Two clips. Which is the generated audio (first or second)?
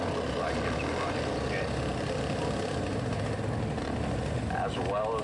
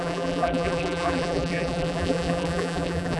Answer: second